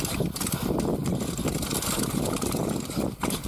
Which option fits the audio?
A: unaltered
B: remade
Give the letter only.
A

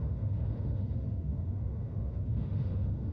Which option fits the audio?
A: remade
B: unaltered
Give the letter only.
A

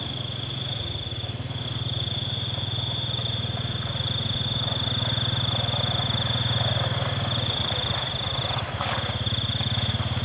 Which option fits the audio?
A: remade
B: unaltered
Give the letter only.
B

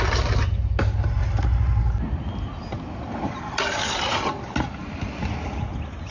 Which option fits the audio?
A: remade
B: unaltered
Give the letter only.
B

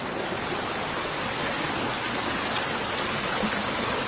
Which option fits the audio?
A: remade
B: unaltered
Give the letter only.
B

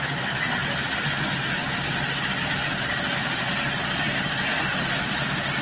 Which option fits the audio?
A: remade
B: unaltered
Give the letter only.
B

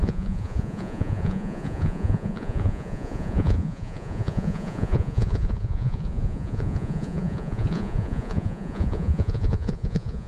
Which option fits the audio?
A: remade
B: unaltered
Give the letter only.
A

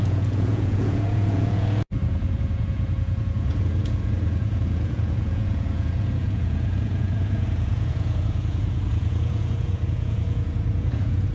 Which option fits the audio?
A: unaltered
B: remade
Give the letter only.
B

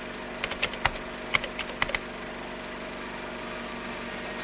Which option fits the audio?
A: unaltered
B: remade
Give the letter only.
A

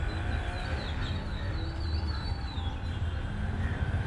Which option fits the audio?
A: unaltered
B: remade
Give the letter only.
A